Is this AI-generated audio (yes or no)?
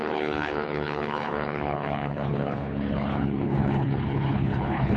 yes